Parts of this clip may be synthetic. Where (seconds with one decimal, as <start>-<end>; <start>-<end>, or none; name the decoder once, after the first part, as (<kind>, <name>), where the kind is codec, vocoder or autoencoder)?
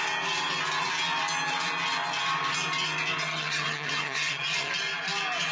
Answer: 3.2-4.7 (vocoder, HiFi-GAN)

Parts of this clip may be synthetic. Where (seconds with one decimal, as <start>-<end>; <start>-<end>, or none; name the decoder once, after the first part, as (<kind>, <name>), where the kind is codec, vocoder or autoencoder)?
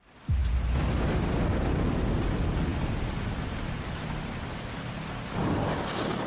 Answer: none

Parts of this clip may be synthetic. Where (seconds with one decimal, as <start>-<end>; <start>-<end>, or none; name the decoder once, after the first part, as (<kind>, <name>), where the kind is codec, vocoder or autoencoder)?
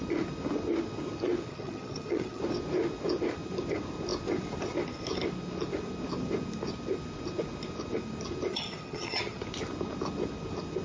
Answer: 1.5-2.4 (vocoder, HiFi-GAN); 8.5-9.4